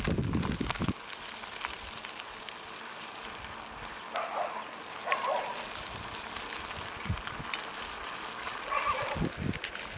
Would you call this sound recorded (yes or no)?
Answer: yes